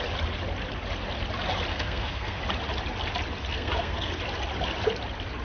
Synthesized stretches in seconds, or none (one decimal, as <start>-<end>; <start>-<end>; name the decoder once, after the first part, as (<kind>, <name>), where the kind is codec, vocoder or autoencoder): 1.7-2.4 (codec, SNAC); 3.5-4.1